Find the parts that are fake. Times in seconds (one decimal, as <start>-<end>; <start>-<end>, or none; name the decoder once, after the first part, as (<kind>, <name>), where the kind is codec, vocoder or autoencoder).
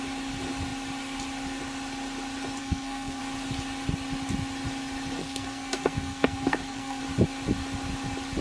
2.6-3.2 (codec, SNAC); 5.2-7.0